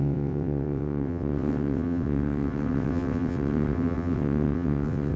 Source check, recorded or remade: remade